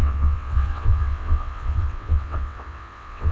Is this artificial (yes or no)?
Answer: yes